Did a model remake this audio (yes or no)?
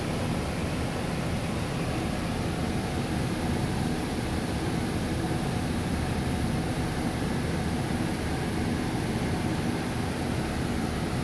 no